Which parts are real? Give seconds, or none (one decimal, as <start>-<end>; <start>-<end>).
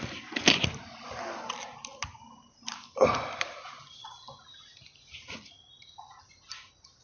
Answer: 0.0-7.0